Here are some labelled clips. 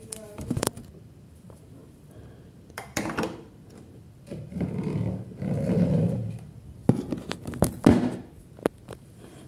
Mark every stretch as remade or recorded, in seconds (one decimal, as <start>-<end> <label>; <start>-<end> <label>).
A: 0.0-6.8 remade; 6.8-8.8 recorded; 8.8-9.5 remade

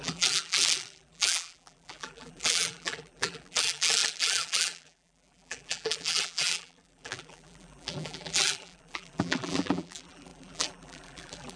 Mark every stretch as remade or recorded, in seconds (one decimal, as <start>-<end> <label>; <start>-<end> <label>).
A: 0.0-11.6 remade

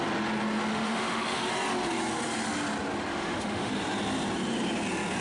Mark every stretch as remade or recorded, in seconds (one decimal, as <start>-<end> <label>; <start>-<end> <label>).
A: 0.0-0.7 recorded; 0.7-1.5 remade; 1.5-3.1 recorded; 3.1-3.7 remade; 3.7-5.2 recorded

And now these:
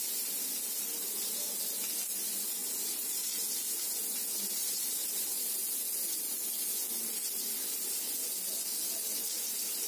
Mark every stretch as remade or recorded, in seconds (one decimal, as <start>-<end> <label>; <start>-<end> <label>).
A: 0.0-2.6 recorded; 2.6-3.3 remade; 3.3-4.6 recorded; 4.6-5.8 remade; 5.8-9.9 recorded

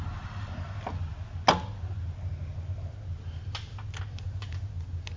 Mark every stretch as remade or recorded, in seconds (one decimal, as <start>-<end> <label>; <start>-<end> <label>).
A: 0.0-5.2 recorded